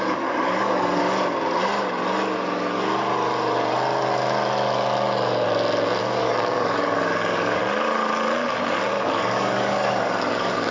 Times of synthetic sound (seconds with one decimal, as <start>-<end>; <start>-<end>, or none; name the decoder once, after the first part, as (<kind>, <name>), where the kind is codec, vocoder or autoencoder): 0.0-1.0 (codec, DAC); 6.0-7.6; 8.9-10.7